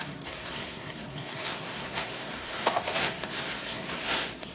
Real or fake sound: fake